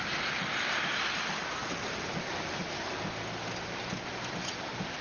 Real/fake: real